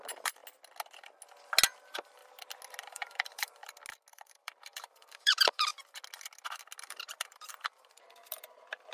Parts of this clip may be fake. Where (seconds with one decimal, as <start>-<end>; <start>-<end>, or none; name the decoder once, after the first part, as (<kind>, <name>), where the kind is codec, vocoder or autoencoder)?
0.0-0.4 (vocoder, BigVGAN v2); 1.8-2.2; 2.9-3.6; 4.1-5.7; 6.8-8.9